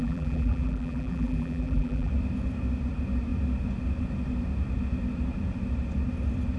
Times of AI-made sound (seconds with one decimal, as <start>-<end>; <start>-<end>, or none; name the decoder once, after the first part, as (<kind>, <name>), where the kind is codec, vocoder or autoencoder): 0.0-2.1 (vocoder, BigVGAN v2)